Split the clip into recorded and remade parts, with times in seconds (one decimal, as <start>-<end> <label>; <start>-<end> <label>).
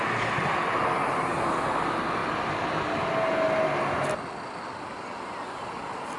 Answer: 0.0-6.2 recorded